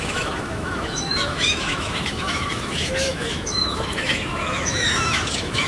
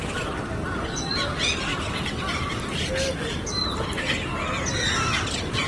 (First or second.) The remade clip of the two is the first